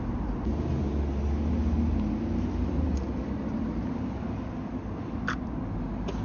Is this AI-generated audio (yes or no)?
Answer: no